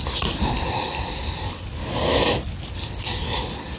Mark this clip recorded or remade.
recorded